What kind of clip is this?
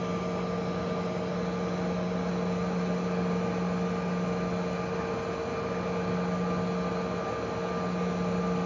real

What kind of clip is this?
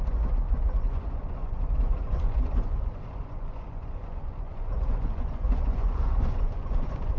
fake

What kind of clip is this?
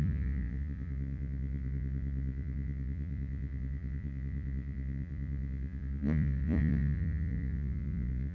fake